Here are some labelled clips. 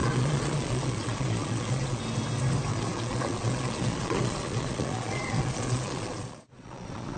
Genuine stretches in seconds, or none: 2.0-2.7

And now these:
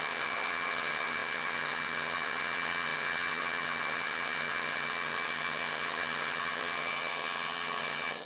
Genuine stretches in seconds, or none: none

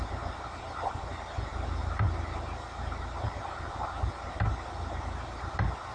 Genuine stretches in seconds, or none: 0.0-5.9

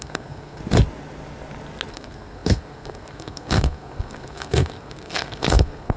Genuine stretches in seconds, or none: 0.6-1.9

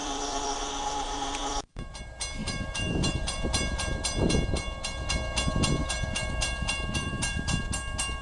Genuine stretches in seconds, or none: 2.0-2.4; 4.3-5.8; 7.6-8.2

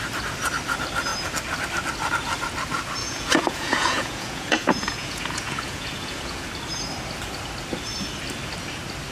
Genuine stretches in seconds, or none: 0.0-3.0; 6.5-9.1

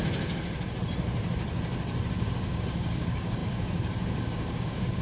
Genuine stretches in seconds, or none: 0.0-2.2